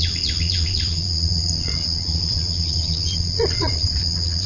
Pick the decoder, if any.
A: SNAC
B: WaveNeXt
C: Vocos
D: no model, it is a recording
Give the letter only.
C